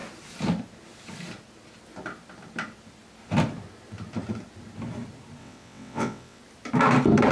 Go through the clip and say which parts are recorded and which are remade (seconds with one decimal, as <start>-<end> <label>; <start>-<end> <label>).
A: 0.0-5.4 recorded; 5.4-6.4 remade; 6.4-7.3 recorded

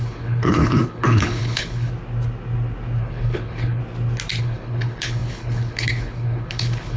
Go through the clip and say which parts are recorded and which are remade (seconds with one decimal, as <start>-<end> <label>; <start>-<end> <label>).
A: 0.0-1.9 remade; 1.9-3.0 recorded; 3.0-3.8 remade; 3.8-4.4 recorded; 4.4-7.0 remade

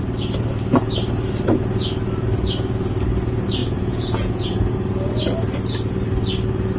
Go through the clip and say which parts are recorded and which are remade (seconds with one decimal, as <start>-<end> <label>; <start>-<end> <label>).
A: 0.0-3.6 recorded; 3.6-4.7 remade; 4.7-6.8 recorded

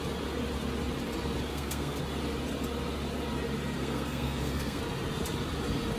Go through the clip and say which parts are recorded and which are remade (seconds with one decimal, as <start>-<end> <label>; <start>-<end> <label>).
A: 0.0-1.5 recorded; 1.5-2.0 remade; 2.0-3.8 recorded; 3.8-4.8 remade; 4.8-6.0 recorded

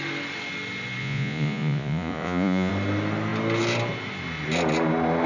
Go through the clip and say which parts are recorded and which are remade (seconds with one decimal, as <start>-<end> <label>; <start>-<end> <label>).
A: 0.0-1.0 recorded; 1.0-2.7 remade; 2.7-5.3 recorded

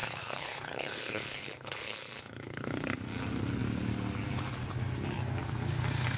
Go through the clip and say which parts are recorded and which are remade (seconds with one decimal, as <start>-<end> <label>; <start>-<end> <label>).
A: 0.0-2.9 remade; 2.9-6.2 recorded

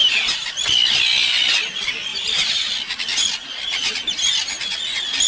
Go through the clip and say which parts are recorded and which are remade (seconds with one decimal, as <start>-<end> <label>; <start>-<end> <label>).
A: 0.0-0.5 remade; 0.5-2.1 recorded; 2.1-2.7 remade; 2.7-5.3 recorded